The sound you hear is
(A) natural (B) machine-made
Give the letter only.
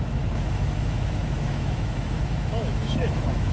B